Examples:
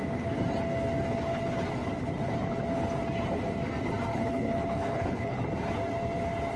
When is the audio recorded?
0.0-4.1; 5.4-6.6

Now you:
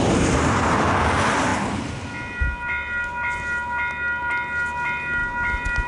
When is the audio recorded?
0.0-5.9

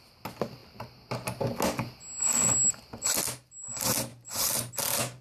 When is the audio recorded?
0.0-4.1; 4.7-5.2